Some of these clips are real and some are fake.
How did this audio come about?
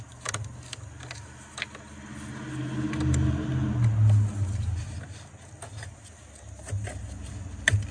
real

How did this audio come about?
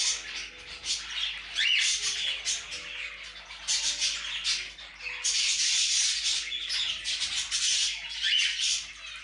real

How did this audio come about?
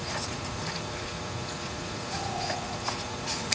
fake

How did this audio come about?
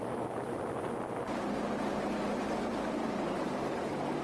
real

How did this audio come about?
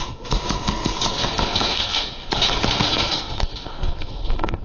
fake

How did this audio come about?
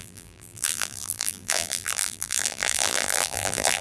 fake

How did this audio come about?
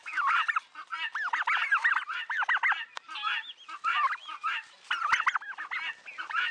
real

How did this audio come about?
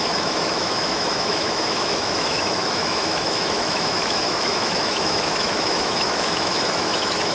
fake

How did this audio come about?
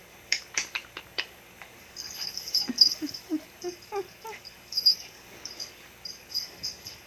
fake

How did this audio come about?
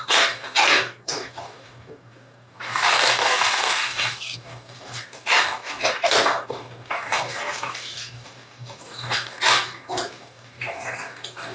fake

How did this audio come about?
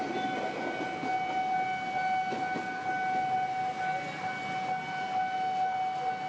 real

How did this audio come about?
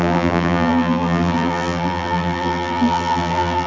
fake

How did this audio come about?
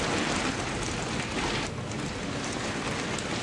real